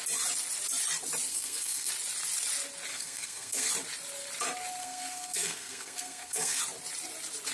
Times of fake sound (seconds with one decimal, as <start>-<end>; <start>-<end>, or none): 1.3-1.9; 2.9-3.7; 4.8-6.6